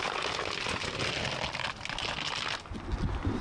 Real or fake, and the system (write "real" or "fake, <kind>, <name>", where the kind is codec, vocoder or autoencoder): real